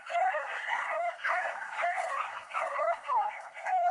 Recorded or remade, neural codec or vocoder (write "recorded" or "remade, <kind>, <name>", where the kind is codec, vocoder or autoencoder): remade, codec, SNAC